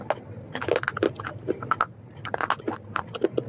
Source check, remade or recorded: recorded